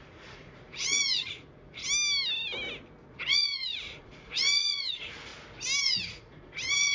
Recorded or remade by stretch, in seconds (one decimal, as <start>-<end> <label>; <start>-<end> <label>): 0.0-1.8 remade; 1.8-3.1 recorded; 3.1-5.3 remade; 5.3-5.8 recorded; 5.8-6.9 remade